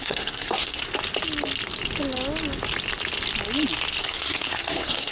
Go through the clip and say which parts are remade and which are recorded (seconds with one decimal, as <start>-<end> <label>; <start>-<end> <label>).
0.0-0.9 remade; 0.9-4.0 recorded; 4.0-5.1 remade